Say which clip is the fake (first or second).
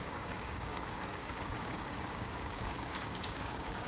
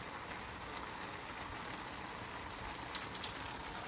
first